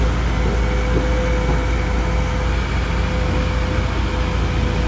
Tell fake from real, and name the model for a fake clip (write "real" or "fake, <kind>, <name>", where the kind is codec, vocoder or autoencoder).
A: real